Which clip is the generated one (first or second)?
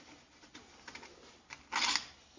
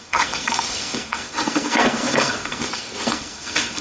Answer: second